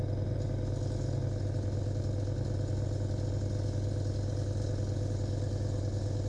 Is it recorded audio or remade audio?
recorded